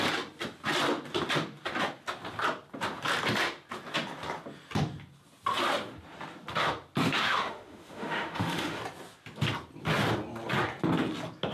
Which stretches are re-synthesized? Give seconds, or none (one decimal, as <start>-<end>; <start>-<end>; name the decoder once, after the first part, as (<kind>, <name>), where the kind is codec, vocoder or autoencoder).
7.0-8.8 (autoencoder, DAC-VAE)